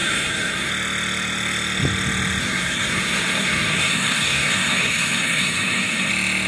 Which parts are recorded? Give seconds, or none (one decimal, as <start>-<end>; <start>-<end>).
0.7-2.4; 6.1-6.5